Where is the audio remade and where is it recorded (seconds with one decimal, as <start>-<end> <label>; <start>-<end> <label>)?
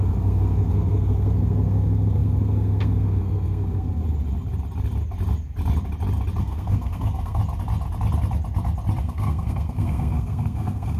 0.0-4.0 remade; 4.0-6.4 recorded; 6.4-7.4 remade; 7.4-9.0 recorded; 9.0-11.0 remade